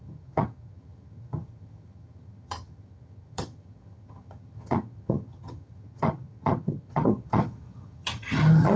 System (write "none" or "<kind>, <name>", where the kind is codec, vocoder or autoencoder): vocoder, HiFi-GAN